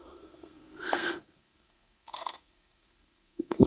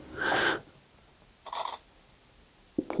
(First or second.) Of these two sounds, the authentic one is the second